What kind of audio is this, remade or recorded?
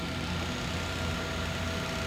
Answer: recorded